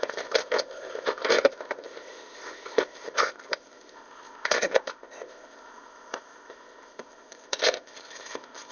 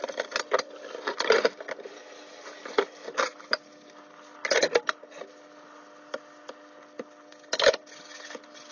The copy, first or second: first